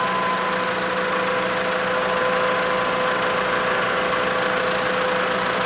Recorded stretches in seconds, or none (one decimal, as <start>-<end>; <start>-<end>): 0.0-5.7